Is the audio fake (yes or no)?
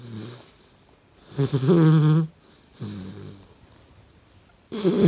no